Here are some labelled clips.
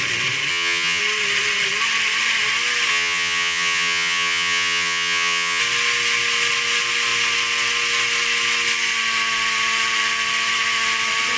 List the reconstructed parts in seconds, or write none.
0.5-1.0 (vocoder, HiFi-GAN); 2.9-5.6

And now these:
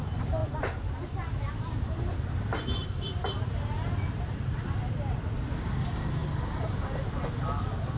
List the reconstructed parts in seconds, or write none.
0.0-6.2 (vocoder, BigVGAN v2)